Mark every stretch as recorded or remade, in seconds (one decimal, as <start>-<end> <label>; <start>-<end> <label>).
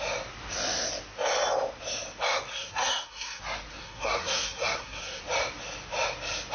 0.0-2.5 recorded; 2.5-3.4 remade; 3.4-3.8 recorded; 3.8-5.2 remade; 5.2-6.5 recorded